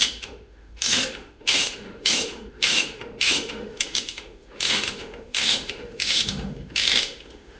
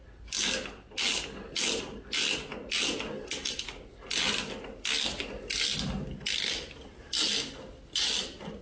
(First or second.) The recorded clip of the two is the second